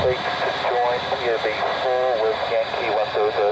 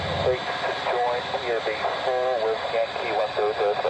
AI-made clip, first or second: second